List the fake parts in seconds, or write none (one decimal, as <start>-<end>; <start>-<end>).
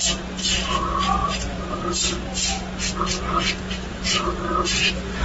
1.2-1.8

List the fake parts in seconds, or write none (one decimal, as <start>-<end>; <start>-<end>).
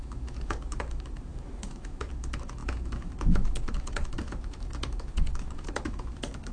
0.0-6.5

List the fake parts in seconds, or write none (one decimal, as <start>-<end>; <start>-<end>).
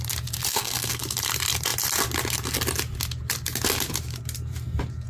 0.5-1.0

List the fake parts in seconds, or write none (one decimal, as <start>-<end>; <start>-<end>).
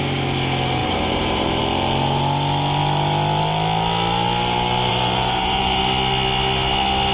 0.8-1.6; 4.9-5.8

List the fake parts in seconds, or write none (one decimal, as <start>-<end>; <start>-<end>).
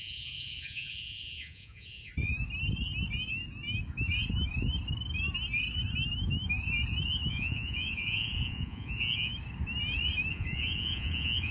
0.0-2.1; 7.3-9.3; 10.3-11.5